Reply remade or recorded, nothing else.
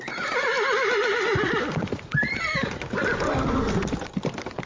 recorded